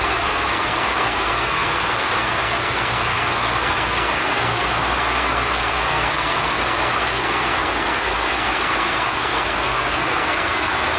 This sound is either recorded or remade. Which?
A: remade